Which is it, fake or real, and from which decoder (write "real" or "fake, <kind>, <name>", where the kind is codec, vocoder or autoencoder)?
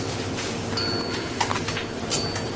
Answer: real